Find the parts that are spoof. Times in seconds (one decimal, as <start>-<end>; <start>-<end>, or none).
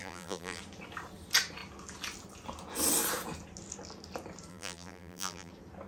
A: 0.0-0.6; 4.5-5.5